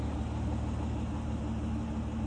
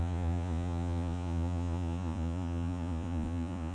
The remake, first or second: second